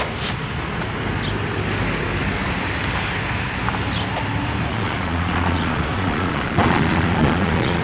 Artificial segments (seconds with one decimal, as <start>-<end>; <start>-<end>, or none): 4.7-7.8